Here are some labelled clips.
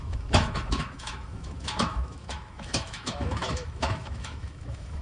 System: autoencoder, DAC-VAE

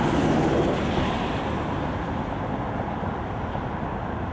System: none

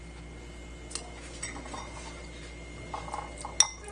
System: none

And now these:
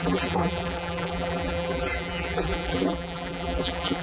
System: vocoder, BigVGAN v2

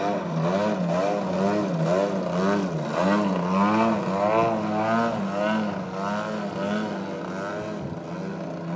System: none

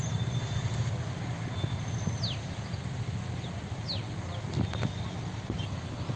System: none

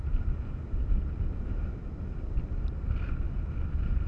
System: none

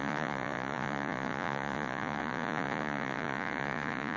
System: vocoder, Vocos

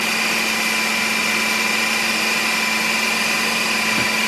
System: none